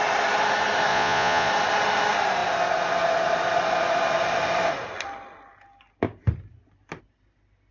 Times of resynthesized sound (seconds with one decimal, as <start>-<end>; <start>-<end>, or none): 0.9-1.5